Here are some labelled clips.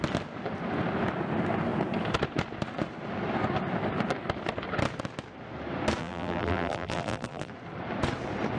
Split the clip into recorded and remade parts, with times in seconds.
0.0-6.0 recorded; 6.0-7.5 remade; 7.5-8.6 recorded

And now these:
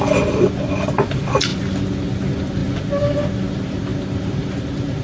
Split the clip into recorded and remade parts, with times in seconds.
0.0-5.0 recorded

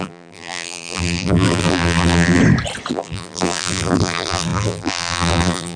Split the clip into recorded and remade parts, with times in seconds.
0.0-2.4 remade; 2.4-2.9 recorded; 2.9-5.8 remade

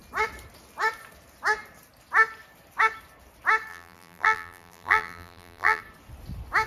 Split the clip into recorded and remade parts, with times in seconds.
0.0-3.7 recorded; 3.7-5.8 remade; 5.8-6.7 recorded

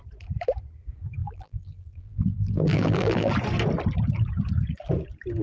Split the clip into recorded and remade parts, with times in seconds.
0.0-1.2 recorded; 1.2-3.3 remade; 3.3-5.4 recorded

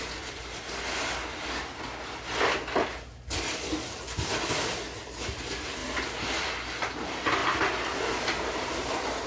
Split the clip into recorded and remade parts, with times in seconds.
0.0-9.3 recorded

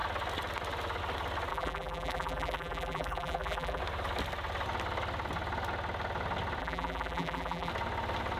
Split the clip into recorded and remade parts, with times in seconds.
0.0-1.5 recorded; 1.5-3.8 remade; 3.8-6.6 recorded; 6.6-7.7 remade; 7.7-8.4 recorded